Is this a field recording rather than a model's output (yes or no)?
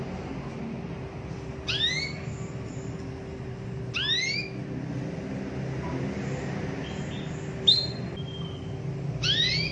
yes